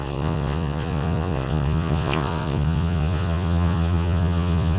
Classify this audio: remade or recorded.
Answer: remade